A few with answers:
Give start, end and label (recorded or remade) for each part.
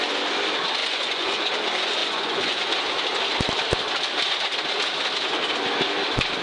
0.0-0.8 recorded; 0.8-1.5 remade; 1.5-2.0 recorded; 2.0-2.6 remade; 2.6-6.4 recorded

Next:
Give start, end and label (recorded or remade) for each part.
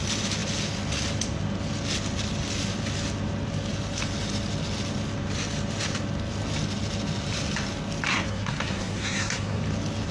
0.0-8.1 recorded; 8.1-9.6 remade; 9.6-10.1 recorded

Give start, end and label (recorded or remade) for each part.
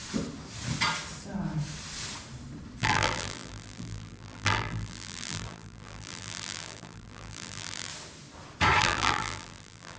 0.0-2.8 recorded; 2.8-7.9 remade; 7.9-8.8 recorded; 8.8-10.0 remade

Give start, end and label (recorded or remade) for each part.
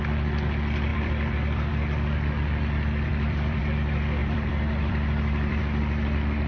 0.0-0.9 recorded; 0.9-1.7 remade; 1.7-3.1 recorded; 3.1-3.6 remade; 3.6-4.2 recorded; 4.2-5.6 remade; 5.6-6.5 recorded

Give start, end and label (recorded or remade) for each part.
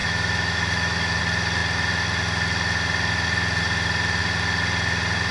0.0-1.2 remade; 1.2-5.3 recorded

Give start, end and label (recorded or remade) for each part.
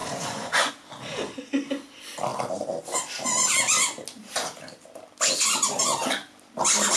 0.0-0.7 remade; 0.7-7.0 recorded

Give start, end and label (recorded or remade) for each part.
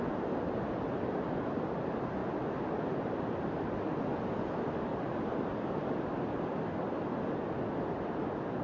0.0-8.6 recorded